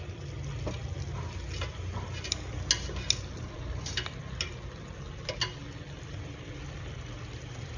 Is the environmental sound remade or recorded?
recorded